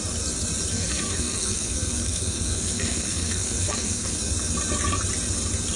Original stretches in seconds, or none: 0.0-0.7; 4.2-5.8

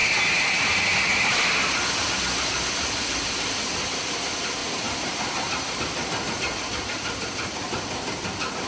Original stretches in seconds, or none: 0.0-4.6; 5.8-8.7

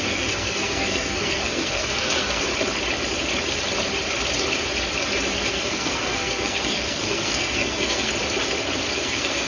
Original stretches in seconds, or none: 2.5-5.5; 8.1-8.9

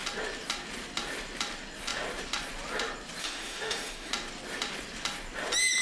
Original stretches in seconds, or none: 0.0-3.2; 4.1-5.8

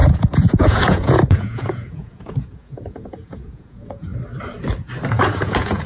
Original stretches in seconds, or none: 4.1-5.1

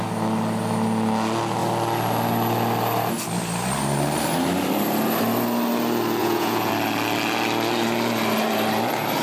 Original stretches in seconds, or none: 0.0-6.2; 6.7-9.2

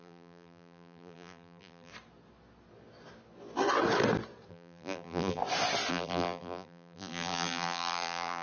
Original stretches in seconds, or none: 1.9-4.5; 5.4-5.9